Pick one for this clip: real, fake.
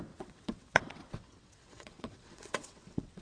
fake